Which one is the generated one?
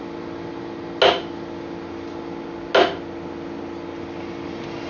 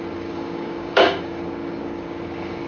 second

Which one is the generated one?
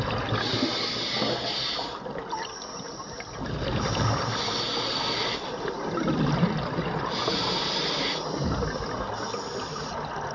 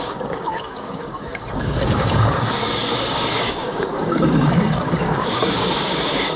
second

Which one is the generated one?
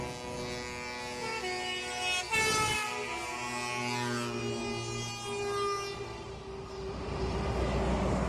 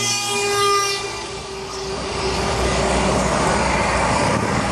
second